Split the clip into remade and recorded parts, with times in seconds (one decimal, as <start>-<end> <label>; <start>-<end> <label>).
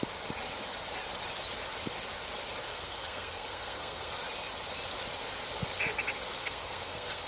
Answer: 0.0-2.6 recorded; 2.6-4.1 remade; 4.1-6.4 recorded; 6.4-7.3 remade